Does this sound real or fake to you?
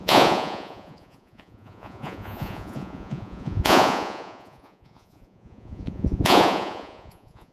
fake